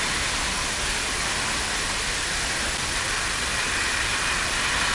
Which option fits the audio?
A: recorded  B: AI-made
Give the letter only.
A